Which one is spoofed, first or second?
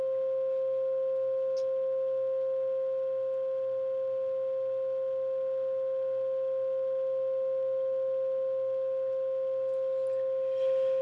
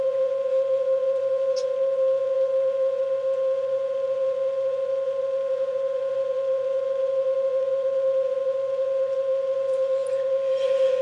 second